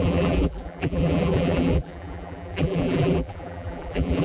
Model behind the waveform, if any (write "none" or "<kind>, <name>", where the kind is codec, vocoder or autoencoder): vocoder, BigVGAN v2